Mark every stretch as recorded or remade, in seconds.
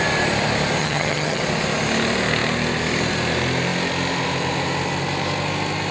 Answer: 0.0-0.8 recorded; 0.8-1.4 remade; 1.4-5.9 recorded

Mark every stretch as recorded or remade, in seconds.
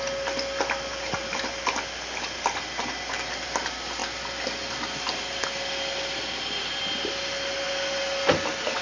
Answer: 0.0-0.9 recorded; 0.9-1.5 remade; 1.5-8.8 recorded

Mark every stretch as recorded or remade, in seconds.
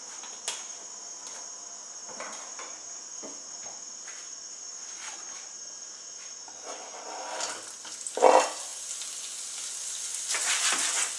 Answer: 0.0-11.2 recorded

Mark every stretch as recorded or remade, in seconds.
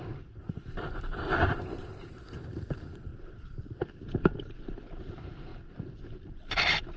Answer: 0.0-3.1 remade; 3.1-5.0 recorded; 5.0-5.5 remade; 5.5-6.0 recorded; 6.0-7.0 remade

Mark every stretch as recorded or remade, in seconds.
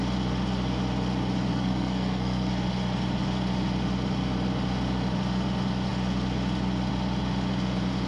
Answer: 0.0-1.5 recorded; 1.5-2.5 remade; 2.5-8.1 recorded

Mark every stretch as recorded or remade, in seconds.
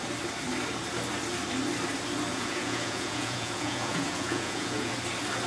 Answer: 0.0-2.3 recorded; 2.3-4.9 remade; 4.9-5.5 recorded